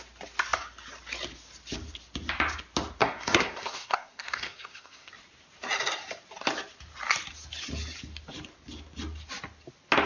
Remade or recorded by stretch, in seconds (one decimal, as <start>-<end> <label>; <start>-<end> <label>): 0.0-3.0 recorded; 3.0-5.1 remade; 5.1-10.1 recorded